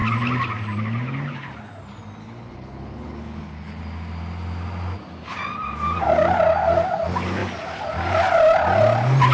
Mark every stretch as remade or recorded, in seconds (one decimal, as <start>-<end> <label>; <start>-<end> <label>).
0.0-2.2 recorded; 2.2-3.8 remade; 3.8-9.3 recorded